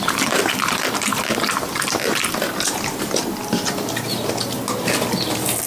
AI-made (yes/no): no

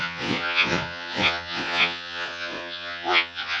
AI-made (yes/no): yes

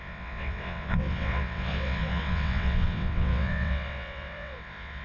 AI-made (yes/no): yes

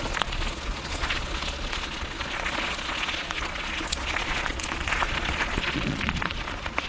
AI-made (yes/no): yes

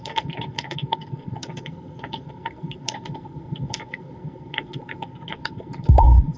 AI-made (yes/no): yes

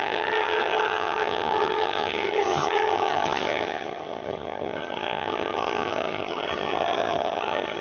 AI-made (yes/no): yes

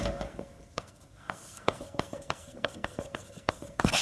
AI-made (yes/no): yes